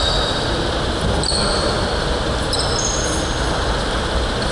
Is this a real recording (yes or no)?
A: yes